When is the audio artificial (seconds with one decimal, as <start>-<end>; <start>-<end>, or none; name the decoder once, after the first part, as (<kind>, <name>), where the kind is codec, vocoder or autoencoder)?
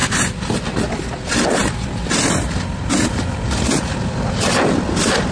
0.0-5.3 (vocoder, BigVGAN v2)